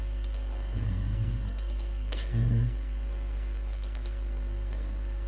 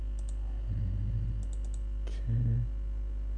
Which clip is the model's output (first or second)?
first